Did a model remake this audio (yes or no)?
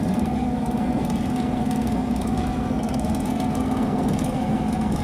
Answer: yes